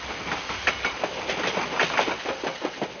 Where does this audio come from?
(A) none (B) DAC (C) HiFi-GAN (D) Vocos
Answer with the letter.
A